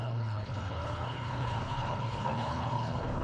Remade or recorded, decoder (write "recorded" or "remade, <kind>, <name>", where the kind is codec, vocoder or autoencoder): remade, codec, HILCodec